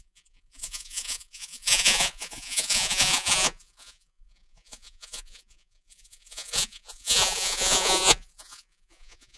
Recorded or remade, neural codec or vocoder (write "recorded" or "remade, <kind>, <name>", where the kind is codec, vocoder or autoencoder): remade, vocoder, Vocos